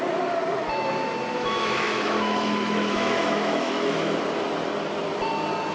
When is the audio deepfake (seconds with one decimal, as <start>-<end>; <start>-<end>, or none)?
1.3-4.2